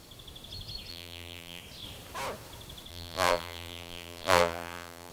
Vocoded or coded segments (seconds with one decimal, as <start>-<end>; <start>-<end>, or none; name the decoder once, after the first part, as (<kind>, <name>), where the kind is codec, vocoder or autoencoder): 0.9-1.6 (vocoder, BigVGAN v2); 2.9-5.1